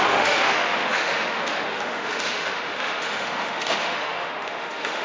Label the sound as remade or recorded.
remade